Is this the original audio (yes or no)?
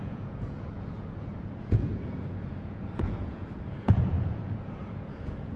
no